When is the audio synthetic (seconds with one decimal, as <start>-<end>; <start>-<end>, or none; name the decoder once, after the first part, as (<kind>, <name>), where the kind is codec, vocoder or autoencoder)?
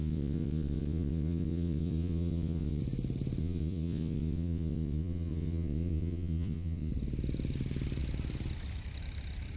0.0-2.8 (vocoder, Vocos); 3.4-6.9